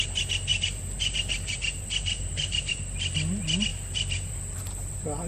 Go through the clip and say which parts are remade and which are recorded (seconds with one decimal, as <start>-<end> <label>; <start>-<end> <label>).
0.0-0.5 recorded; 0.5-2.7 remade; 2.7-3.7 recorded; 3.7-4.3 remade; 4.3-5.3 recorded